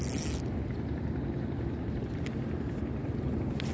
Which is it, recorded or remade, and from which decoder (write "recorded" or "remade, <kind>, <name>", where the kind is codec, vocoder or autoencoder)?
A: recorded